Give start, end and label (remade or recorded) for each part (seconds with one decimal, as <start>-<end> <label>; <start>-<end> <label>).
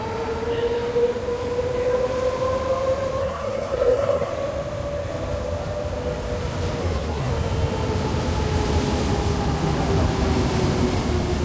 0.0-3.2 recorded; 3.2-4.3 remade; 4.3-6.8 recorded; 6.8-7.3 remade; 7.3-11.4 recorded